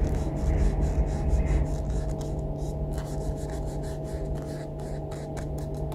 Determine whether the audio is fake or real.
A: real